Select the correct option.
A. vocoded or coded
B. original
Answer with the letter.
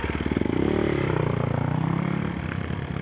B